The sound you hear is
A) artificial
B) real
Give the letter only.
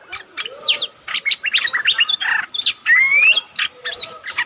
B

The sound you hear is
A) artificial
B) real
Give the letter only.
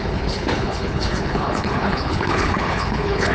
A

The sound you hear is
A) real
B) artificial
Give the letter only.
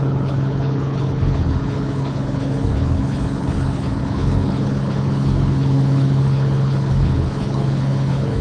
B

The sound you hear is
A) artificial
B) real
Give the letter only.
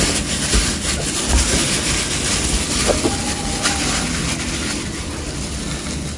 B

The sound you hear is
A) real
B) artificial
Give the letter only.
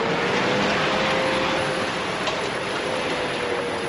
A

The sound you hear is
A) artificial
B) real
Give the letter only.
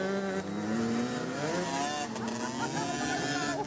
B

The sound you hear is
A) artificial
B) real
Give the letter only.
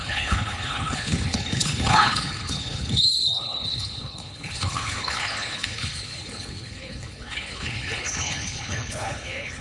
A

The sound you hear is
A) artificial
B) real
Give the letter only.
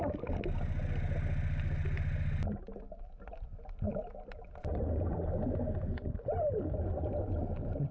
B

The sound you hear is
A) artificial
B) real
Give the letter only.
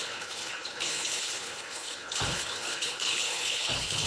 A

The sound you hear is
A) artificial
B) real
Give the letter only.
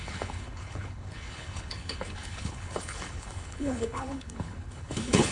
A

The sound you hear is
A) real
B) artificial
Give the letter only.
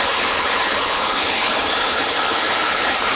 B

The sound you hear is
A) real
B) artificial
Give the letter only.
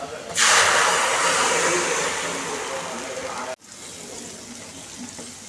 A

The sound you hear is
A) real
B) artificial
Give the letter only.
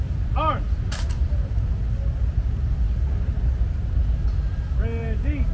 A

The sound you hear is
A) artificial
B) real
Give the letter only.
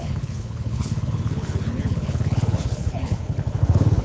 A